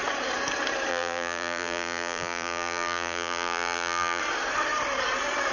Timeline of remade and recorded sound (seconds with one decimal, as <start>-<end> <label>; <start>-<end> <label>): 0.0-0.9 recorded; 0.9-4.2 remade; 4.2-5.5 recorded